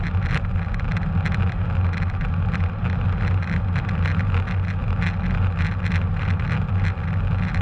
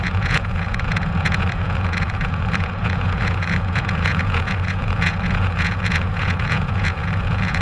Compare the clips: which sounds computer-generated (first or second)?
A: second